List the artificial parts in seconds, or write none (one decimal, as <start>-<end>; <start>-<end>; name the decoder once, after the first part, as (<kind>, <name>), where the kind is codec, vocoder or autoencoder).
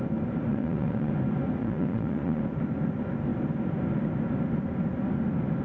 0.5-1.1 (vocoder, Vocos); 1.6-2.4